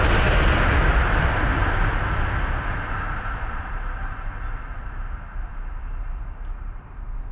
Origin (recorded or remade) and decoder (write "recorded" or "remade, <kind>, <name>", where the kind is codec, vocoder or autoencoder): recorded